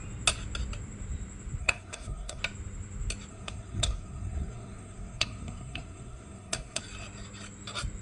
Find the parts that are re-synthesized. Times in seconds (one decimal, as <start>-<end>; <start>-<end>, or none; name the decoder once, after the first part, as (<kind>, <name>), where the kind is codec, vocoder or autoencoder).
1.6-2.4 (codec, SNAC); 3.3-6.8